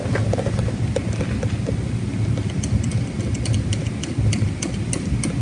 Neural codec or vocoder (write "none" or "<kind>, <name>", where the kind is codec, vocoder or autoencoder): none